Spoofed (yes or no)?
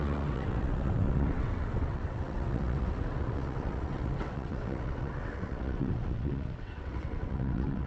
yes